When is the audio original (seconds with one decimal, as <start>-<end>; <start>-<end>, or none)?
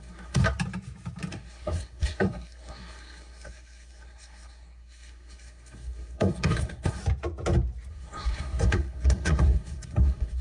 0.4-1.3; 7.0-7.9